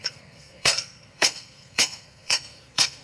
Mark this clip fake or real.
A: fake